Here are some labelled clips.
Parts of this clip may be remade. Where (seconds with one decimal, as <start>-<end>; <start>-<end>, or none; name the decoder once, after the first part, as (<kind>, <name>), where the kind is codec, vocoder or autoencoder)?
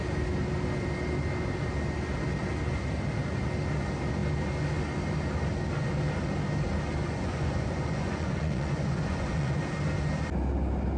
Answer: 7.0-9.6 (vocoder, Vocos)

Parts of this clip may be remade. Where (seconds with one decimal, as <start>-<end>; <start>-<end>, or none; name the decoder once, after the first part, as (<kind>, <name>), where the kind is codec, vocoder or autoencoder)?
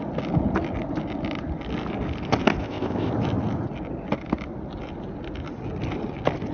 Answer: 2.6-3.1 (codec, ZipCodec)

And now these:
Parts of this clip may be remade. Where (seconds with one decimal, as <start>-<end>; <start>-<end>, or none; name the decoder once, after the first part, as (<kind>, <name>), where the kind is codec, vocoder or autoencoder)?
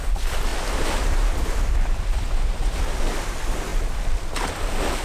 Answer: none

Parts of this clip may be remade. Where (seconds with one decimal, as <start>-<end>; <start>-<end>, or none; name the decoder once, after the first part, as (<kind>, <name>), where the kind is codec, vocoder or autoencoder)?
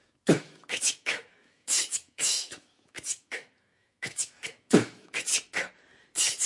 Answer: 0.0-5.3 (autoencoder, DAC-VAE)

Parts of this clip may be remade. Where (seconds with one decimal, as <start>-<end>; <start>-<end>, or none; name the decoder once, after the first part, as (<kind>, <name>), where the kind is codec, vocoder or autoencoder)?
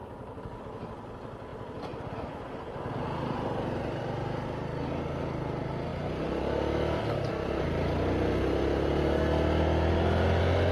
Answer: 0.0-0.6 (codec, DAC)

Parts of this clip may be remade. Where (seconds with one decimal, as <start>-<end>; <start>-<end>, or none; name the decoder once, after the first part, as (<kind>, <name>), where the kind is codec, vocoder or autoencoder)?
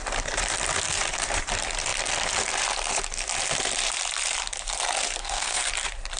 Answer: 5.2-5.7 (codec, SNAC)